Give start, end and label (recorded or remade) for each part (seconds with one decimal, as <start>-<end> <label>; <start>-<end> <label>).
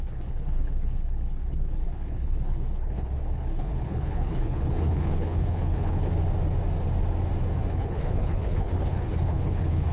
0.0-6.1 remade; 6.1-7.7 recorded; 7.7-9.9 remade